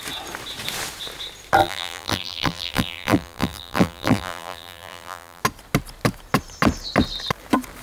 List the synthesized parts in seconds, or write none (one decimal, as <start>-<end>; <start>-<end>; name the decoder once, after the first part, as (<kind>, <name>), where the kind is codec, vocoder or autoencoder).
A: 1.6-5.4 (vocoder, BigVGAN v2)